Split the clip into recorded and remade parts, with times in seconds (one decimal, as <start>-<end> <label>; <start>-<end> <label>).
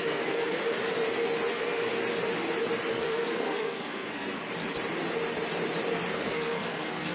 0.0-0.6 remade; 0.6-1.5 recorded; 1.5-1.9 remade; 1.9-2.9 recorded; 2.9-4.3 remade; 4.3-6.1 recorded; 6.1-7.1 remade